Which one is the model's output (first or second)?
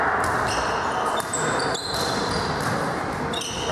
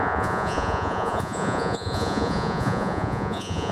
second